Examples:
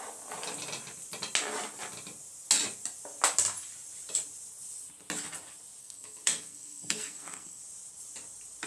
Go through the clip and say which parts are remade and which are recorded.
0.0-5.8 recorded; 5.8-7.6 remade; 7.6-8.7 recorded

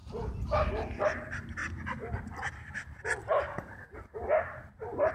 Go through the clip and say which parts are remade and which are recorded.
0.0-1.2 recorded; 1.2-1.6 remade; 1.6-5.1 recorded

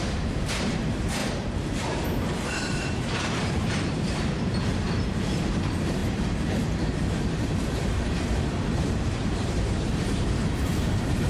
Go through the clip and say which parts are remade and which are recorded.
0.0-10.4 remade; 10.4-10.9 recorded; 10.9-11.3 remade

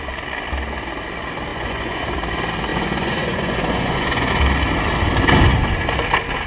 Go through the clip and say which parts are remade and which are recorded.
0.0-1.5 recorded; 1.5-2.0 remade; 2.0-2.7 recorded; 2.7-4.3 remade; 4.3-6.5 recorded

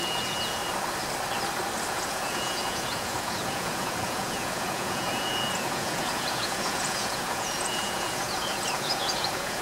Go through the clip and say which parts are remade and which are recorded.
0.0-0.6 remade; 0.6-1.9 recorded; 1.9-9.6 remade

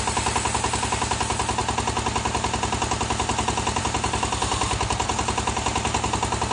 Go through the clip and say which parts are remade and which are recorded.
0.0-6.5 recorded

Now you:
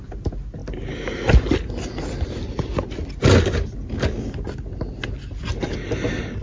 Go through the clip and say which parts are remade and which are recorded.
0.0-6.4 recorded